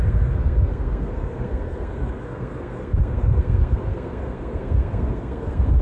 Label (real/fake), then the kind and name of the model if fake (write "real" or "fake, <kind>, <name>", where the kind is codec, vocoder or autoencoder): fake, codec, SNAC